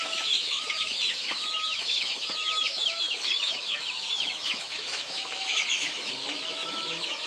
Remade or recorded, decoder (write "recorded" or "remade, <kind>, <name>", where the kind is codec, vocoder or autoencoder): remade, autoencoder, DAC-VAE